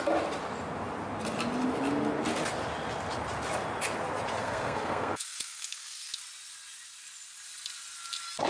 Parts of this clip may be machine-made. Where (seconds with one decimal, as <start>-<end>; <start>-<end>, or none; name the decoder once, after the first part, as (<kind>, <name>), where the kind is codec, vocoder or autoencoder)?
4.4-6.2 (codec, SNAC)